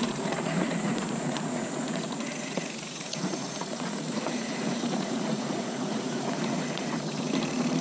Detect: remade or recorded remade